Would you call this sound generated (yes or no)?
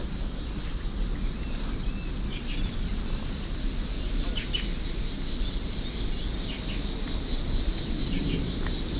no